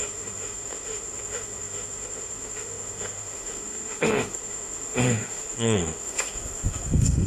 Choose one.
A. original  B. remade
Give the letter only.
B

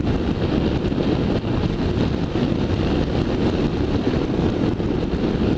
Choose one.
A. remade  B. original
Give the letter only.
B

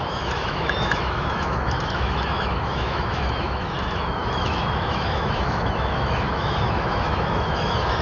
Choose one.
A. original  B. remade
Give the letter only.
B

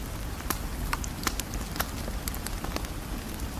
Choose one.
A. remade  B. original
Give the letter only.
B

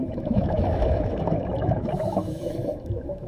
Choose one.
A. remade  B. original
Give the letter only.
A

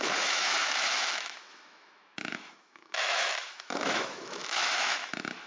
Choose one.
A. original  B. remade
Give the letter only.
B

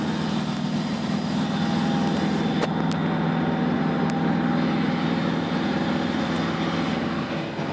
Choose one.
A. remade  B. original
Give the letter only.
B